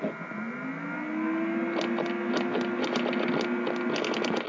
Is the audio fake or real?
real